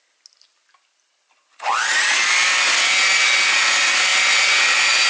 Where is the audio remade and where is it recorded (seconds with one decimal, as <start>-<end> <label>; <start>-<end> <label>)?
0.0-5.1 recorded